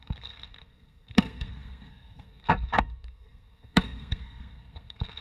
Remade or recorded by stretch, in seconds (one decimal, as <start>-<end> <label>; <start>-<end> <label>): 0.0-5.2 remade